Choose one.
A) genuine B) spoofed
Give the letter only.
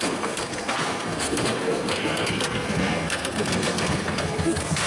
B